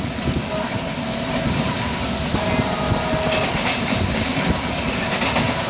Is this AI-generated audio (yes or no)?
no